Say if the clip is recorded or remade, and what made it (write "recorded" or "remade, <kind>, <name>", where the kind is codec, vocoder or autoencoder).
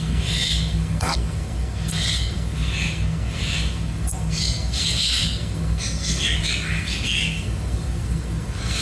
remade, codec, SNAC